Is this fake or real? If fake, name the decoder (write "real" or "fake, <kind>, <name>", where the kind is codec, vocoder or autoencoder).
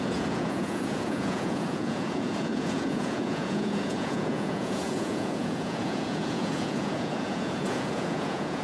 fake, vocoder, Vocos